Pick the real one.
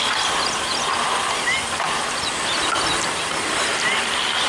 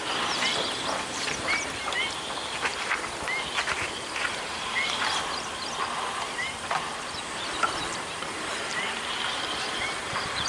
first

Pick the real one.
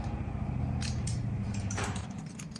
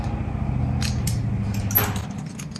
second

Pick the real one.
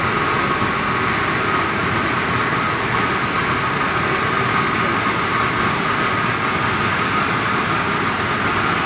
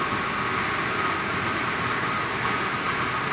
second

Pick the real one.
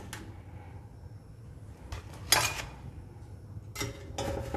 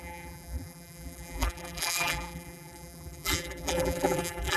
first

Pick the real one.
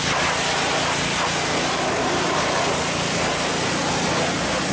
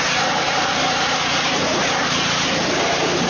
first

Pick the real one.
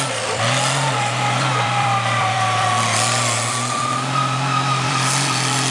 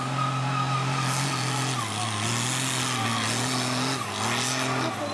second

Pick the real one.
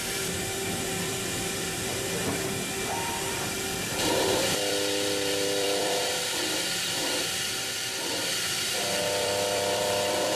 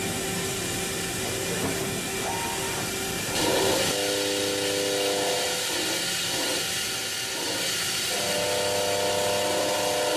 second